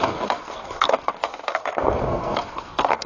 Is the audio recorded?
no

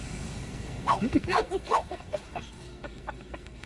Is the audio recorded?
no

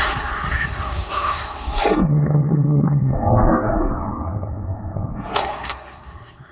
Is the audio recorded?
no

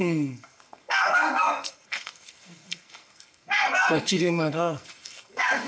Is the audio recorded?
no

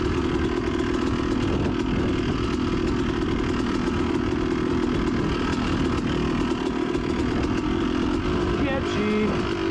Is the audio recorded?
yes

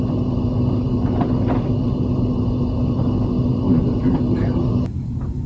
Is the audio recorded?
yes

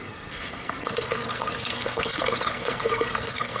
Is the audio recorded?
no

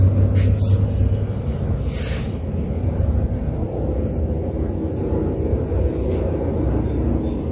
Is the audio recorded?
yes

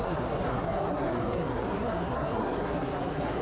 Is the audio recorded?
no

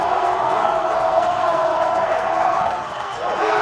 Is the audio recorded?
no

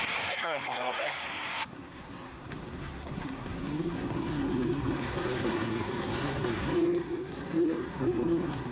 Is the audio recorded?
no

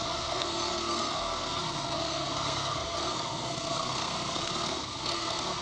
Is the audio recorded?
no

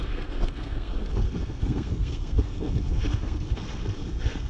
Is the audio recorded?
no